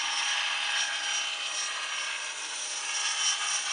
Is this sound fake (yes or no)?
no